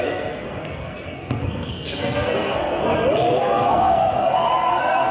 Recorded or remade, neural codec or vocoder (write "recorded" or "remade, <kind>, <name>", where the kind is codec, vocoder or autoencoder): remade, codec, SNAC